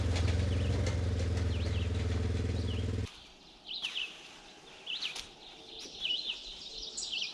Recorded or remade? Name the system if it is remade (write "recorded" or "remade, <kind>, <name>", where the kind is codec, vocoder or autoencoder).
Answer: recorded